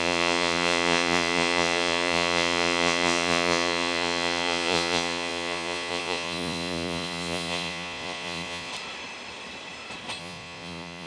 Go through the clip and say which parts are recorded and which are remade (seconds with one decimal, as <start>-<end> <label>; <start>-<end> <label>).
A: 0.0-8.7 remade; 8.7-10.2 recorded; 10.2-11.1 remade